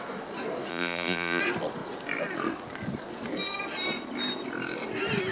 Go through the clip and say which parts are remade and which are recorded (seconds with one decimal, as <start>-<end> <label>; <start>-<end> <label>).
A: 0.0-0.7 recorded; 0.7-1.4 remade; 1.4-5.3 recorded